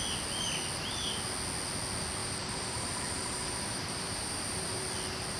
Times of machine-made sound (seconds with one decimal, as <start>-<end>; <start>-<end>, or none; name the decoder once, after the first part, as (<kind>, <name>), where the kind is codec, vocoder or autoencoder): 2.2-4.9 (vocoder, BigVGAN v2)